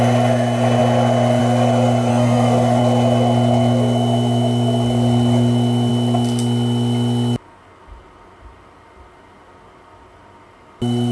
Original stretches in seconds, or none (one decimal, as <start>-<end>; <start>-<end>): 0.0-2.1; 2.8-11.1